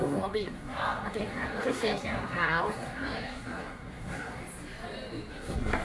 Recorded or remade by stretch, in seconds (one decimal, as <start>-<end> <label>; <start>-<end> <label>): 0.0-4.4 remade; 4.4-5.3 recorded; 5.3-5.8 remade